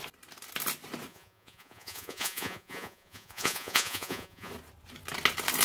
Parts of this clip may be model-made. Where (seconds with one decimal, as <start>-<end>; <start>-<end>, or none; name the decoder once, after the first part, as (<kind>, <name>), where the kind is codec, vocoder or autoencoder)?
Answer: 1.1-4.5 (vocoder, Vocos)